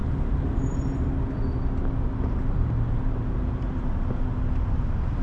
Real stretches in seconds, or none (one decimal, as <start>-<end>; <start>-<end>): 0.0-5.2